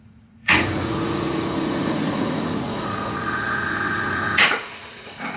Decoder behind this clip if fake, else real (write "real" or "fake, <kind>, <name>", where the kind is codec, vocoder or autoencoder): fake, vocoder, Vocos